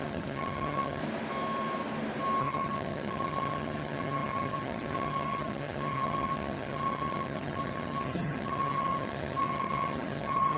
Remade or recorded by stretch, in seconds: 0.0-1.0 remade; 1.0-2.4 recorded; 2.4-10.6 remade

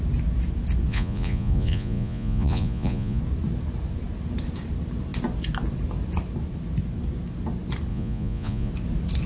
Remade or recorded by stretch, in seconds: 0.0-0.9 recorded; 0.9-3.2 remade; 3.2-7.9 recorded; 7.9-8.7 remade; 8.7-9.3 recorded

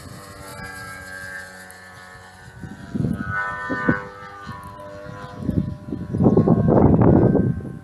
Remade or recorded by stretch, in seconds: 0.0-7.8 recorded

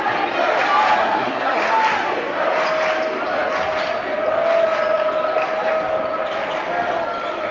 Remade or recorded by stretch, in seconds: 0.0-1.0 recorded; 1.0-1.6 remade; 1.6-7.5 recorded

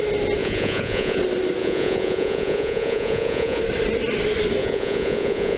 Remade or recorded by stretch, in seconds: 0.0-0.4 recorded; 0.4-1.2 remade; 1.2-1.6 recorded; 1.6-3.6 remade; 3.6-4.6 recorded; 4.6-5.6 remade

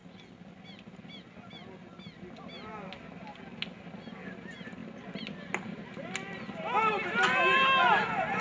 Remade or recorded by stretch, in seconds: 0.0-8.4 recorded

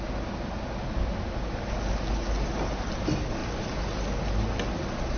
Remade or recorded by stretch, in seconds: 0.0-5.2 recorded